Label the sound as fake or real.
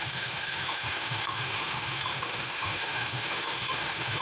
fake